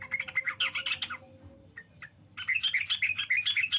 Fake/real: real